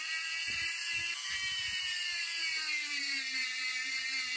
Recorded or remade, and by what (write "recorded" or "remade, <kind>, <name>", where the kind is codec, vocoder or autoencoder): remade, vocoder, BigVGAN v2